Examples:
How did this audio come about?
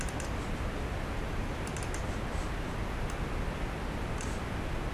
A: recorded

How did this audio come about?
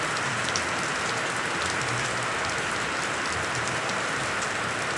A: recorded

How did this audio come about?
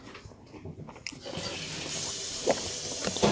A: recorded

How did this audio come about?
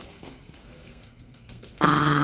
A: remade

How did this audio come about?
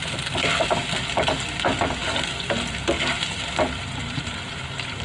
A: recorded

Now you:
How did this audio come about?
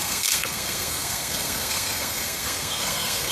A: remade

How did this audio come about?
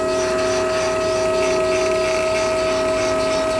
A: recorded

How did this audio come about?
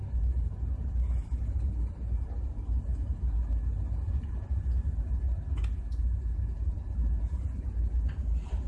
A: recorded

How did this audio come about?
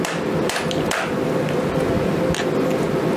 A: recorded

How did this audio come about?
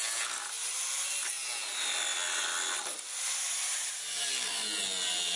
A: recorded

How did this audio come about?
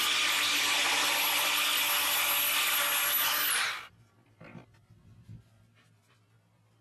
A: recorded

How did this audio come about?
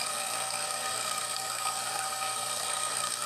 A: remade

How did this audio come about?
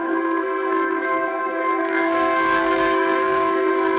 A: remade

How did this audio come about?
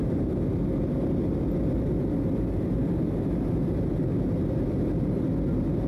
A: recorded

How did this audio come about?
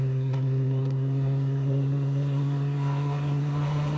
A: remade